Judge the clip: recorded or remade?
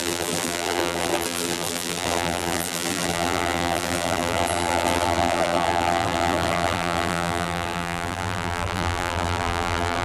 remade